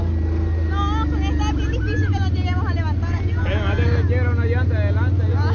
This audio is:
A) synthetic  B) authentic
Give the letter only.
B